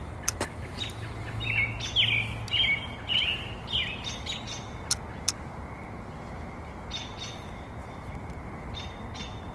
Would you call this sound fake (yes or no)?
no